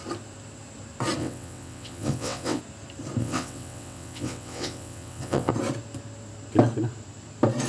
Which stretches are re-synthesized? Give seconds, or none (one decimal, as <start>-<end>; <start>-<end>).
1.2-2.6; 3.2-5.5